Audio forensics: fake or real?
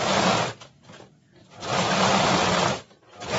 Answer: fake